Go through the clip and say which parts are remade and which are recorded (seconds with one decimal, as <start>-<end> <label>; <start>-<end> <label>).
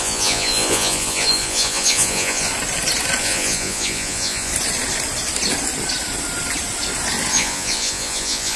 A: 0.0-2.5 remade; 2.5-3.2 recorded; 3.2-4.5 remade; 4.5-7.3 recorded; 7.3-8.6 remade